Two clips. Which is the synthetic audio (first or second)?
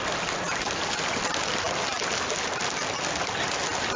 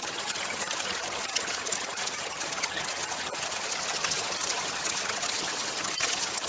second